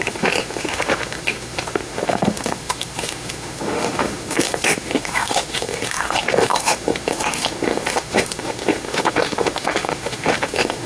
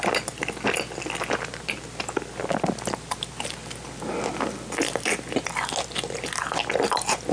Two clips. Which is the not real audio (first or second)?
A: first